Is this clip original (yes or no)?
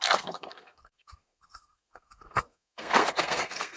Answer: no